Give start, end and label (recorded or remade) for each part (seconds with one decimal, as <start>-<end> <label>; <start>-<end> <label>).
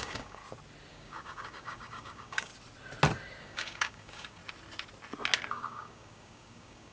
0.0-0.4 remade; 0.4-0.9 recorded; 0.9-2.5 remade; 2.5-3.4 recorded; 3.4-4.4 remade; 4.4-5.5 recorded; 5.5-6.9 remade